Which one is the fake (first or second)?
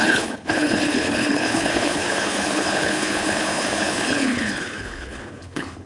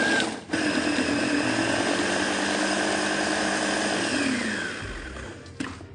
first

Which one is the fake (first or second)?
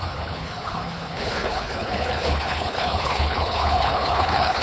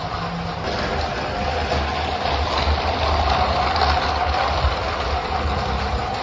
first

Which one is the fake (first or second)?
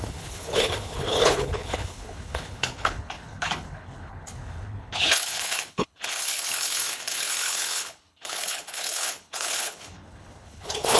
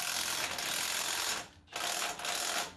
first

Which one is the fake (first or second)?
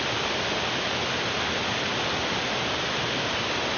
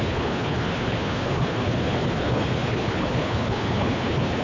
second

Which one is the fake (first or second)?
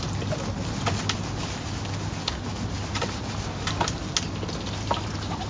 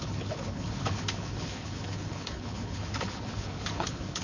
second